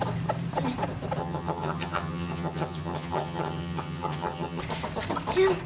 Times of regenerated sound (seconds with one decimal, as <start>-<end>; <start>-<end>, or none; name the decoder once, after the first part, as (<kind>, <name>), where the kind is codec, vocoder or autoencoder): 1.2-4.6 (vocoder, HiFi-GAN)